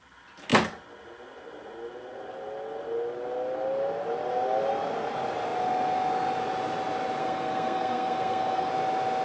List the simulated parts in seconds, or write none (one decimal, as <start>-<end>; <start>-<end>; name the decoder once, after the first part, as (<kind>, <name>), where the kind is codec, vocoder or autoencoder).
7.2-8.7 (codec, SNAC)